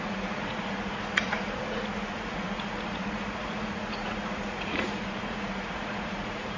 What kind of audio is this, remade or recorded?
remade